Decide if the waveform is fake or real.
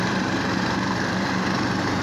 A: fake